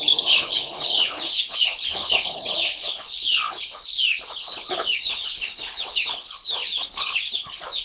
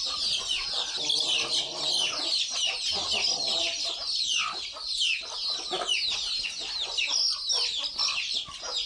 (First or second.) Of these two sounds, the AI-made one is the first